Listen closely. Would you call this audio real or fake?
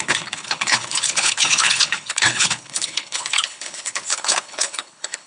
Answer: fake